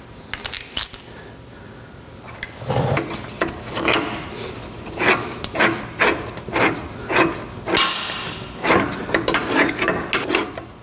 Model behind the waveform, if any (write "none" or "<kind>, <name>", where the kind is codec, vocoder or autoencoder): none